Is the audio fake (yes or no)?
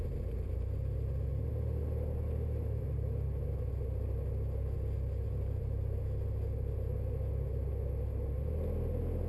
no